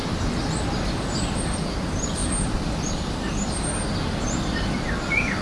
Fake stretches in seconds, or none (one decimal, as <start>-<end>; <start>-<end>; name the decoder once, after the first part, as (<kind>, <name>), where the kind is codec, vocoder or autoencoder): 2.2-3.5 (vocoder, BigVGAN v2)